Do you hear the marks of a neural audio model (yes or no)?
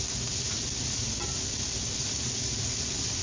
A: no